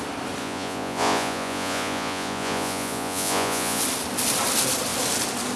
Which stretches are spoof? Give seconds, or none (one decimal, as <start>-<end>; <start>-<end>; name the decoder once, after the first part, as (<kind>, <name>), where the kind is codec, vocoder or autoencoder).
0.4-3.8 (vocoder, Vocos)